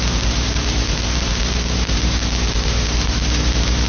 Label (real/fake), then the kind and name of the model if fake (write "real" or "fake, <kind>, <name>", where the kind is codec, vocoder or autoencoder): fake, vocoder, BigVGAN v2